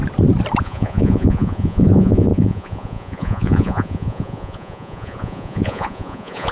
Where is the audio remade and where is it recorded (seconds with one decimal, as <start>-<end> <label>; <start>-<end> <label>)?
0.0-0.6 recorded; 0.6-6.5 remade